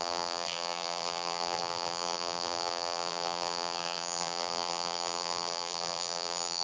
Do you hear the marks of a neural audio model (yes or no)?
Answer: yes